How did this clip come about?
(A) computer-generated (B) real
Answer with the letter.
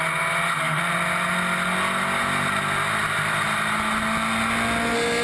B